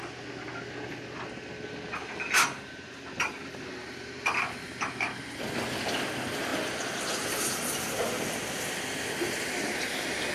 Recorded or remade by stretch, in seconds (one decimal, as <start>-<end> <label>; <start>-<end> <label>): 0.0-10.3 recorded